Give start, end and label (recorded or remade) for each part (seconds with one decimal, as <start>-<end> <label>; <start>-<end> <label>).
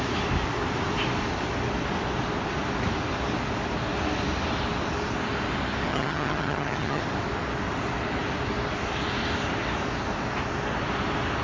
0.0-5.9 recorded; 5.9-7.0 remade; 7.0-11.4 recorded